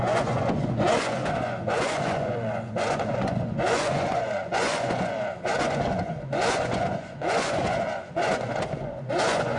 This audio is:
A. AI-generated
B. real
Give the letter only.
A